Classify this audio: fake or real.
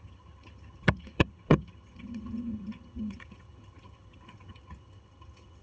fake